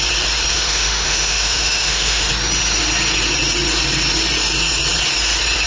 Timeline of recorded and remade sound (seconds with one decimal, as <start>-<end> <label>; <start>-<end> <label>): 0.0-0.5 recorded; 0.5-2.3 remade; 2.3-5.7 recorded